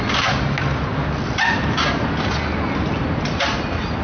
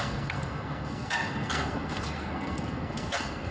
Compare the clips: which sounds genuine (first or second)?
first